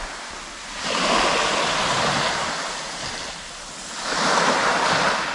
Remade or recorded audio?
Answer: recorded